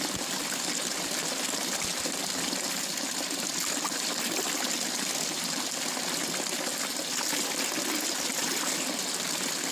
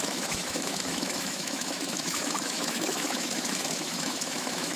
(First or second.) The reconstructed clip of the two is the second